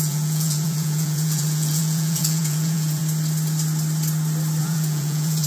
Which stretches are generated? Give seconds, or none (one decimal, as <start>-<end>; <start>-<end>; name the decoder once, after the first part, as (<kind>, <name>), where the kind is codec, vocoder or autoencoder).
0.0-3.0 (vocoder, Vocos); 4.6-5.5